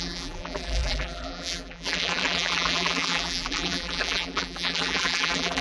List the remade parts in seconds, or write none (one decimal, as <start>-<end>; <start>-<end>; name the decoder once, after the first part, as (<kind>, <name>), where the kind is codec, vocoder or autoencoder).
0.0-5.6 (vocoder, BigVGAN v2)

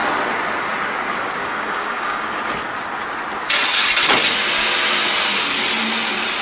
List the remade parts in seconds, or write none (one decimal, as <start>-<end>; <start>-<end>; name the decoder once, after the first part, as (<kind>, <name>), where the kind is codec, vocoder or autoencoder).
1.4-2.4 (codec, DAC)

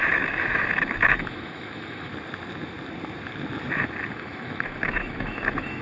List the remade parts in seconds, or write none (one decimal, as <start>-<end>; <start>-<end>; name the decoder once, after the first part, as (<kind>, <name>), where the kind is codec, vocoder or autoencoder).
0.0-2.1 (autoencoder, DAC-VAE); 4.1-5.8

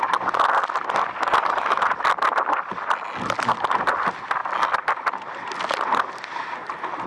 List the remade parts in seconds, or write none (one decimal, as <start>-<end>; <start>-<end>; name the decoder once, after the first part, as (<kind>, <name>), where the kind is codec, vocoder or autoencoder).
none